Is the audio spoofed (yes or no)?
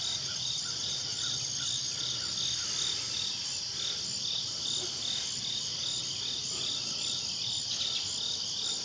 no